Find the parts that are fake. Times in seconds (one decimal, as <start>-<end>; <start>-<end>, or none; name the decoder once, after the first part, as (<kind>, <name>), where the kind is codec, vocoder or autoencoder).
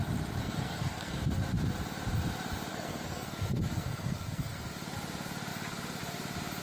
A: 0.4-1.2 (codec, SNAC); 2.7-4.6